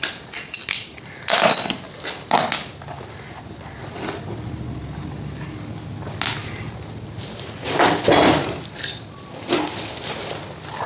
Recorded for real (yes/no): yes